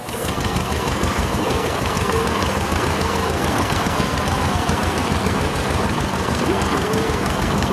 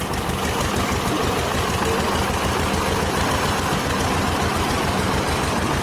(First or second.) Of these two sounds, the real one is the second